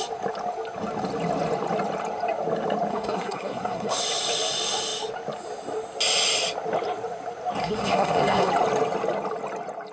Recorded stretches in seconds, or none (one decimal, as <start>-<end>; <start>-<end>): 0.0-2.9; 4.0-7.6; 8.5-9.9